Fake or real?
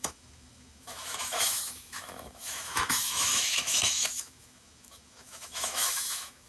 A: fake